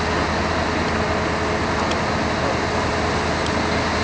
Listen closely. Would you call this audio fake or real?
real